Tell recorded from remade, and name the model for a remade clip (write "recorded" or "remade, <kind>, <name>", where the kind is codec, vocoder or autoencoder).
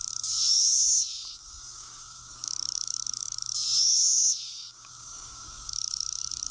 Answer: remade, codec, DAC